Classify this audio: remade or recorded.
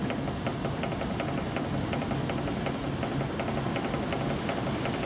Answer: recorded